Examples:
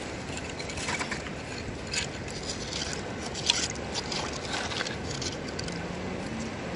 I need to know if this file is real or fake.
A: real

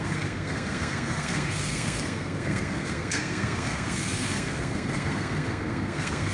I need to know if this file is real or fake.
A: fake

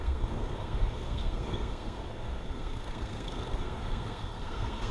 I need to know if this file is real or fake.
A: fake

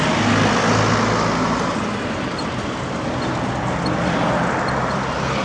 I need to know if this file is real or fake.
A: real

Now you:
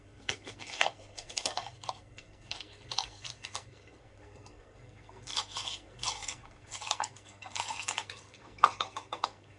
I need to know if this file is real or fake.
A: fake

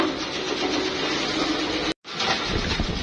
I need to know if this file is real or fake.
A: real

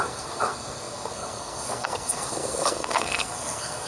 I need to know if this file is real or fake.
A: fake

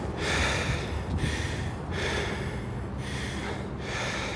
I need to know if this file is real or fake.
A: real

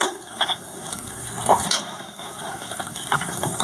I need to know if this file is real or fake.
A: fake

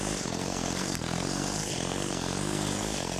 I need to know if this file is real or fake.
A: fake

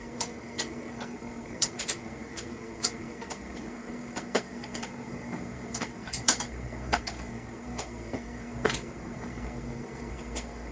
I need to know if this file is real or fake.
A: fake